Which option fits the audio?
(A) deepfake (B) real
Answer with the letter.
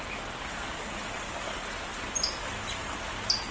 B